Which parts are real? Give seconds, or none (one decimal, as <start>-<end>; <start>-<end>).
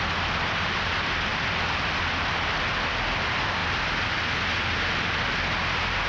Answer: 0.0-6.1